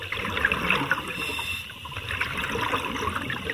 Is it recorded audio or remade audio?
remade